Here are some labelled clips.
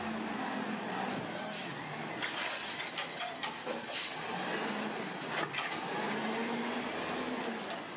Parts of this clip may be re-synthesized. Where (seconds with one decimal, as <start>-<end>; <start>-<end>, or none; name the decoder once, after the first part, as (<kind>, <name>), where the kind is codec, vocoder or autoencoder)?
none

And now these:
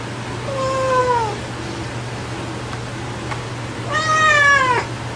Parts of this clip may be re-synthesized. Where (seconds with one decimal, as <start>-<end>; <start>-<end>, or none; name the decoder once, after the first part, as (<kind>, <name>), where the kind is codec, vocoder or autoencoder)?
none

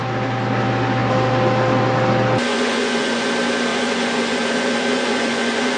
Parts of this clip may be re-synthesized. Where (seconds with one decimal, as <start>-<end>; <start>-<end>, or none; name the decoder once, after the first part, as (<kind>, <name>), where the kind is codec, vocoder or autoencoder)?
2.5-3.3 (vocoder, Vocos); 3.7-5.8

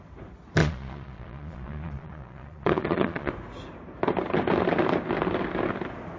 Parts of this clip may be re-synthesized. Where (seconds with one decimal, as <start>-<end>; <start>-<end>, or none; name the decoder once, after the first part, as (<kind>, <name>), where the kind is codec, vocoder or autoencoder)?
0.6-3.3 (vocoder, Vocos)

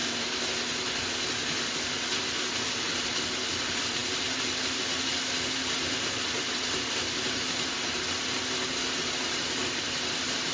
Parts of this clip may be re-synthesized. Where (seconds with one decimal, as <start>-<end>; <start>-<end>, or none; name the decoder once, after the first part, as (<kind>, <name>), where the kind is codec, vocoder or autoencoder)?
none